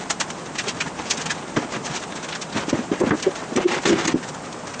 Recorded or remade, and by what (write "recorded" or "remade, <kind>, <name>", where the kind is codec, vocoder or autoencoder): recorded